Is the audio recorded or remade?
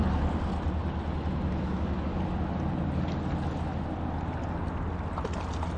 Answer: recorded